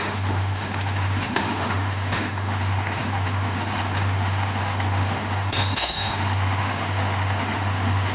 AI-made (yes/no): yes